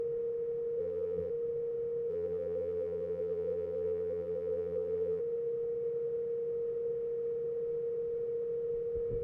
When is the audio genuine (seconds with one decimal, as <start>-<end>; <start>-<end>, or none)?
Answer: 0.0-0.8; 1.3-2.1; 5.2-9.2